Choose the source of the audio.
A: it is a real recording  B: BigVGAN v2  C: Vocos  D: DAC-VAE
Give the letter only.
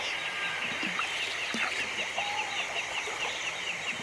A